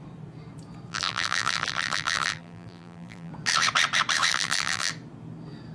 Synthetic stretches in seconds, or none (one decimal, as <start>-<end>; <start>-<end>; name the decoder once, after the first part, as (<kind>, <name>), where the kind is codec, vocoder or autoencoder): 0.9-3.3 (vocoder, BigVGAN v2); 4.3-4.9